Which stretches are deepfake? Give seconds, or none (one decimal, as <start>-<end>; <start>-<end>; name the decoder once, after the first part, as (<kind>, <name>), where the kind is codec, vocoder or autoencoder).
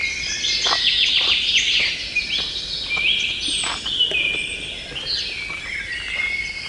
0.0-1.9 (vocoder, BigVGAN v2)